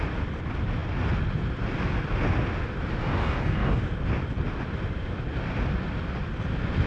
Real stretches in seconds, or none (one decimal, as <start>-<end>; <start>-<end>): 0.0-3.0; 3.8-6.9